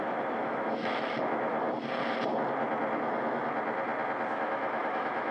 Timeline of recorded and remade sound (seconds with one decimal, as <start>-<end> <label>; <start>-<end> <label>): 0.0-1.5 remade; 1.5-4.3 recorded; 4.3-5.3 remade